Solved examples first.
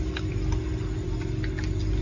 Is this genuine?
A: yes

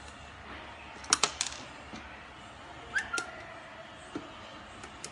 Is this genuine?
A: yes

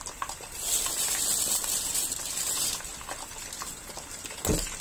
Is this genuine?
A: no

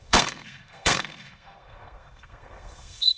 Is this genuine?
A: no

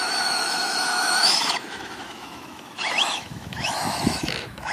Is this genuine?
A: no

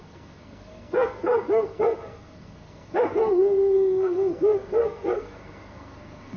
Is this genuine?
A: no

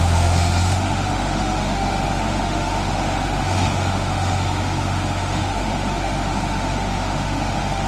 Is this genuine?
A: no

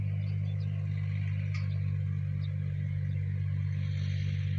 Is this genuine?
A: yes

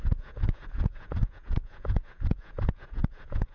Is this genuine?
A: no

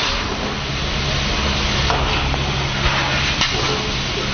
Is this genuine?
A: yes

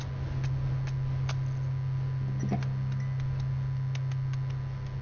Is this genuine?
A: yes